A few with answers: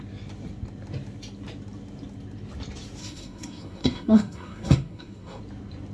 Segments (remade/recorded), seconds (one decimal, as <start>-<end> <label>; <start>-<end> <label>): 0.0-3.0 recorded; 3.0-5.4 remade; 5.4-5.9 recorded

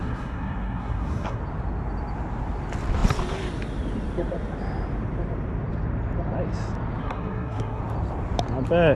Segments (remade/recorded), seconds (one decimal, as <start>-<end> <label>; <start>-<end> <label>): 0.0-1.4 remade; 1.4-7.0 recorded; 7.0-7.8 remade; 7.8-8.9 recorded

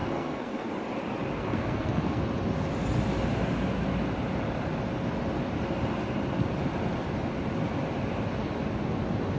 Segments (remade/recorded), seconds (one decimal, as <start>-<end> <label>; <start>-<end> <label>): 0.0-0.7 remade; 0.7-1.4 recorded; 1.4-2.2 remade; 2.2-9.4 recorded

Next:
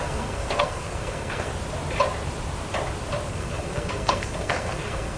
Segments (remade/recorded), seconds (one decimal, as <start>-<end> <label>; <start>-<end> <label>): 0.0-1.5 remade; 1.5-3.3 recorded; 3.3-5.2 remade

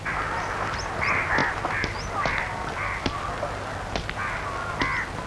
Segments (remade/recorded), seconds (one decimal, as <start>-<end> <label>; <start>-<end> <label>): 0.0-5.3 recorded

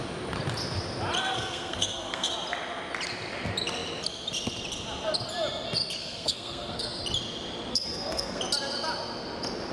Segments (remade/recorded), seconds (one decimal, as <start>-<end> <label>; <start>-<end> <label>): 0.0-1.2 recorded; 1.2-2.3 remade; 2.3-6.0 recorded; 6.0-7.0 remade; 7.0-7.7 recorded; 7.7-8.4 remade; 8.4-9.7 recorded

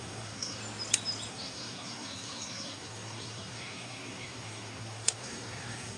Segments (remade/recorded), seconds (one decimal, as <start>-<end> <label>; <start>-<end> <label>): 0.0-0.6 remade; 0.6-1.3 recorded; 1.3-6.0 remade

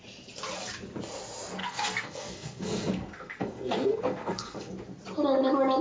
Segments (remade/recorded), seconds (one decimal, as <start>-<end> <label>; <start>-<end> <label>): 0.0-1.6 recorded; 1.6-4.7 remade; 4.7-5.8 recorded